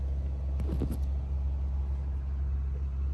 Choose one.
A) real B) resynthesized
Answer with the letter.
A